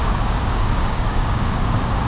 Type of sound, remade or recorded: remade